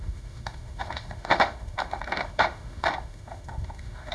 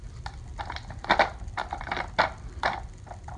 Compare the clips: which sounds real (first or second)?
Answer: second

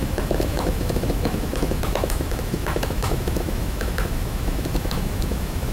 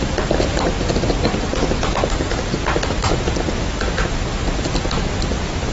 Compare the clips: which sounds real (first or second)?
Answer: second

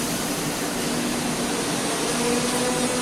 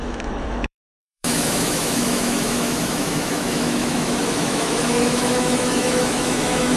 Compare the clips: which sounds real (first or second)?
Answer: first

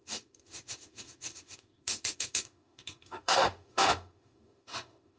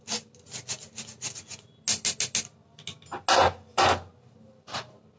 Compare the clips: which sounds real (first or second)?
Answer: second